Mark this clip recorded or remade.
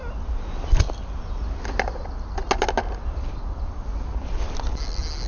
recorded